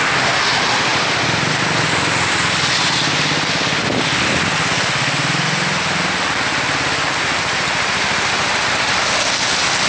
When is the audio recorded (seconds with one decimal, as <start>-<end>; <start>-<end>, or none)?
0.0-9.9